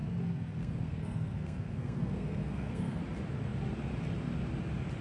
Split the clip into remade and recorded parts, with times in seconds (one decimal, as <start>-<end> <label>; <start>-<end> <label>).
0.0-3.0 remade; 3.0-5.0 recorded